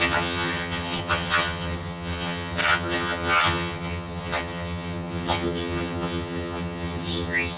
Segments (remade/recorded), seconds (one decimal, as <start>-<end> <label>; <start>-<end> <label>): 0.0-7.6 remade